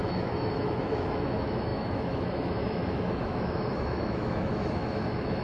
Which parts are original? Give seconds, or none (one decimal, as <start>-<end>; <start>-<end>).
none